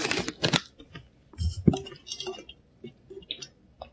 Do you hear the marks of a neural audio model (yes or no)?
no